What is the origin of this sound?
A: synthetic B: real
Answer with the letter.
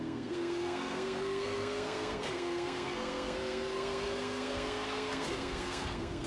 A